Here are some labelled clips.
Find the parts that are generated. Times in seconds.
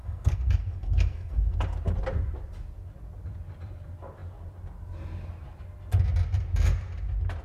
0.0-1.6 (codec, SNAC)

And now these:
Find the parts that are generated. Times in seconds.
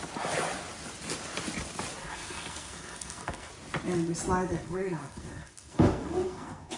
2.0-3.5 (codec, SNAC); 4.5-6.8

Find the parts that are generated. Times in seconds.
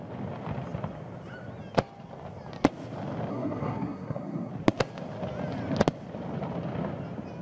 3.3-4.5 (codec, SNAC)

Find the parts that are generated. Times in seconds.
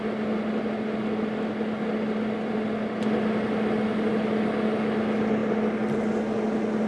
none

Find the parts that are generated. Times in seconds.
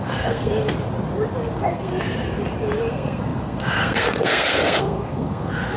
0.0-0.7 (codec, SNAC); 1.5-1.9; 2.9-5.8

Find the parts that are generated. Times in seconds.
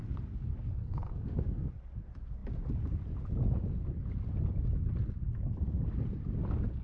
0.5-1.7 (codec, SNAC)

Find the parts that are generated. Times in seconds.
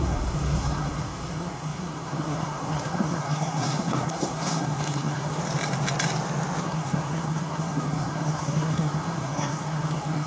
0.0-5.4 (codec, SNAC); 6.6-10.3